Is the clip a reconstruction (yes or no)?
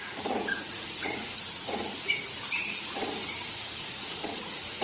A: yes